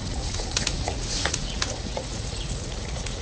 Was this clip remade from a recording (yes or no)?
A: yes